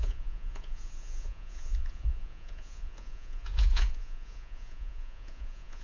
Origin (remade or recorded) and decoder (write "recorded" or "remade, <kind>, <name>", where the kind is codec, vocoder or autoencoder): remade, vocoder, Vocos